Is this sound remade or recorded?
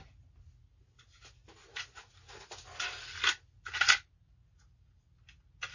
recorded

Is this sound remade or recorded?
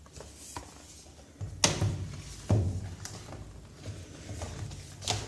recorded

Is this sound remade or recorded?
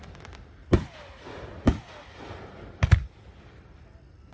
recorded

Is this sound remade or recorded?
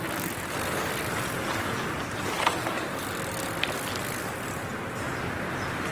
recorded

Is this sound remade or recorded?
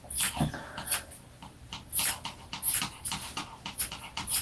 recorded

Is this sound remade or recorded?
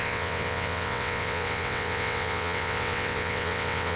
remade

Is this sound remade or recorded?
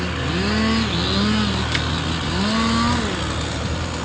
recorded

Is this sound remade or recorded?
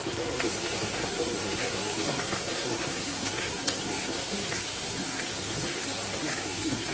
remade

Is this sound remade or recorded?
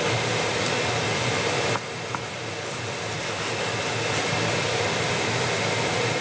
recorded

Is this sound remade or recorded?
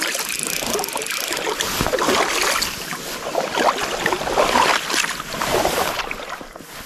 recorded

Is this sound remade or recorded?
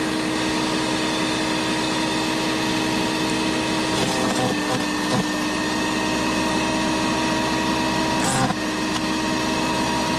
recorded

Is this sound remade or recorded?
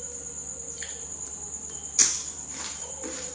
recorded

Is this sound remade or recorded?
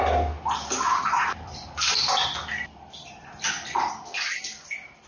recorded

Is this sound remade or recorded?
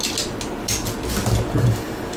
recorded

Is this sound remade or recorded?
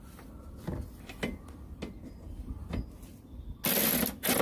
recorded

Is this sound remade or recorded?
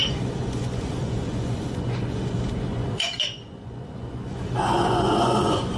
remade